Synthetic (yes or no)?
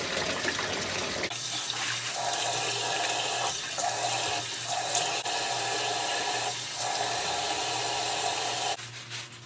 no